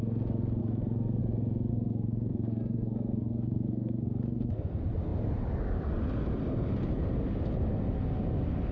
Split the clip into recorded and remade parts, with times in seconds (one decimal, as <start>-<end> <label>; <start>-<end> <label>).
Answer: 0.0-0.6 recorded; 0.6-1.2 remade; 1.2-1.7 recorded; 1.7-4.6 remade; 4.6-8.7 recorded